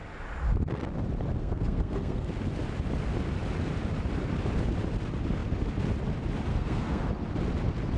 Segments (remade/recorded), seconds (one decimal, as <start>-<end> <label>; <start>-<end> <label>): 0.0-1.4 recorded; 1.4-2.3 remade; 2.3-6.5 recorded; 6.5-7.0 remade; 7.0-8.0 recorded